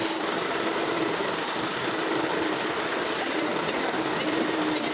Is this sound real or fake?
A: fake